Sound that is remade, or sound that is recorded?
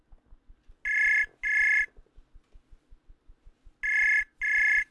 recorded